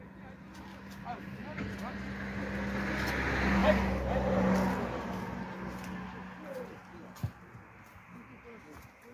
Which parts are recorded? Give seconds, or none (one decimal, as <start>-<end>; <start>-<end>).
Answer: 0.0-9.1